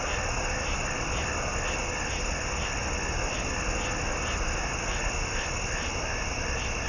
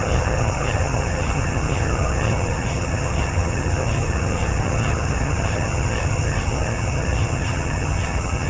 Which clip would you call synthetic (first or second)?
second